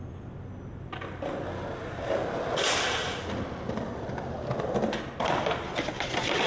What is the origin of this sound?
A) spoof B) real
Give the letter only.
B